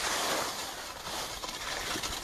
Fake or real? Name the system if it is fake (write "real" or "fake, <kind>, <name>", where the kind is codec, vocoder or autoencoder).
real